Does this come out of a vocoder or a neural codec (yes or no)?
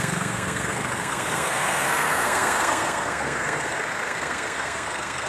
yes